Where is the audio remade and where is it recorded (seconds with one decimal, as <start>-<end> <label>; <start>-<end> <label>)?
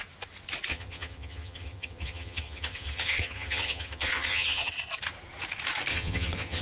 0.0-0.7 recorded; 0.7-4.7 remade; 4.7-5.9 recorded; 5.9-6.6 remade